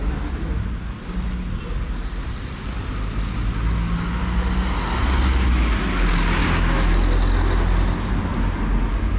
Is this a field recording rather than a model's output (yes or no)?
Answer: yes